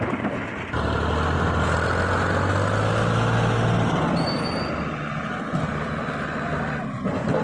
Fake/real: real